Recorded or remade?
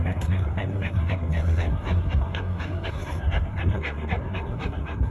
remade